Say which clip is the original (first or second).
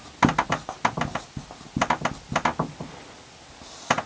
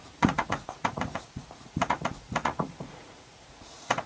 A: first